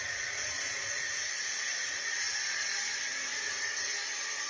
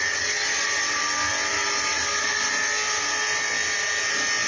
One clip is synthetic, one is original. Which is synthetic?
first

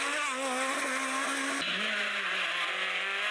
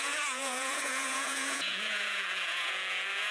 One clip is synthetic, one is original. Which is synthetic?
second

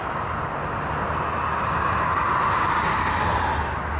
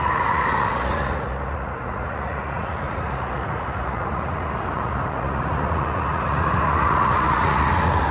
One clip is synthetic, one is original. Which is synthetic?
second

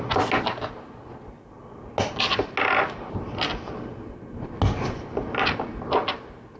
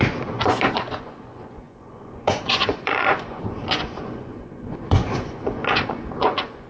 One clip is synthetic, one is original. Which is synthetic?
second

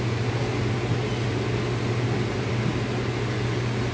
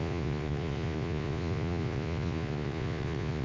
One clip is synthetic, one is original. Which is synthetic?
second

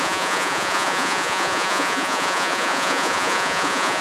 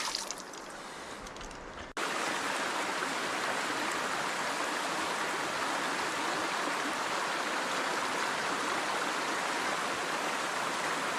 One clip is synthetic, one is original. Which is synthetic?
first